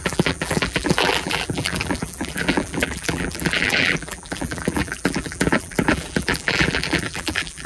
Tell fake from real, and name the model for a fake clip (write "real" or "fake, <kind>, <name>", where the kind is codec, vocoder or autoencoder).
fake, vocoder, BigVGAN v2